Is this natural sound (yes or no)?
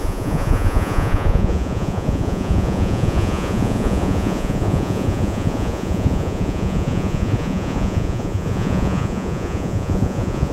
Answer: no